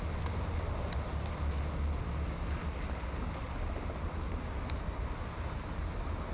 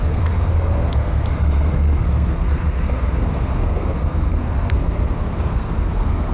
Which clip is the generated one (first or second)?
second